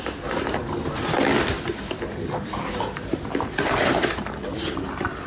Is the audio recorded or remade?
remade